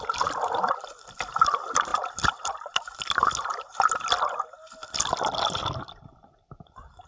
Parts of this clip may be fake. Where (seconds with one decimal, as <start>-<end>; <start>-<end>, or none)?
none